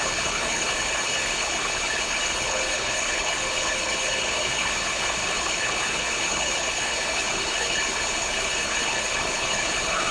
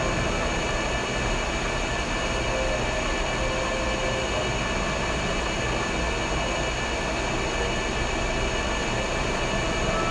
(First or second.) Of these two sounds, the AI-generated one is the first